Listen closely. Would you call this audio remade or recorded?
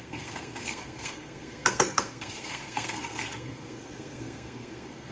remade